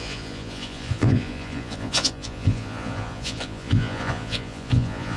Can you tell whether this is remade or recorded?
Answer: remade